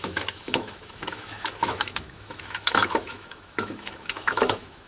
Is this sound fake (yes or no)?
yes